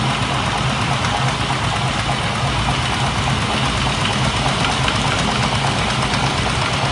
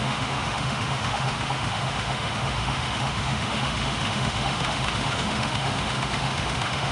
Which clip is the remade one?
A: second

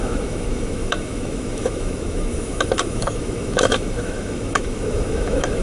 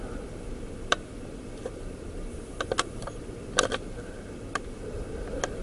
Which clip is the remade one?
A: first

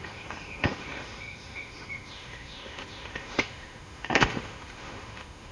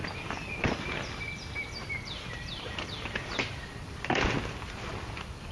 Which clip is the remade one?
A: first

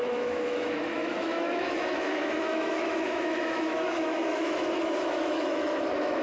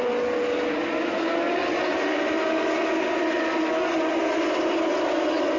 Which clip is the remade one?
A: first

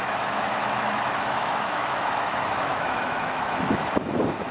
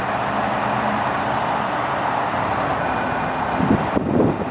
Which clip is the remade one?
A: first